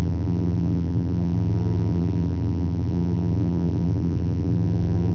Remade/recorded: remade